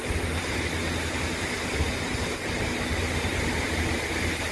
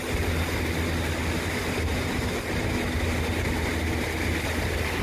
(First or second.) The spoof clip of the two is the first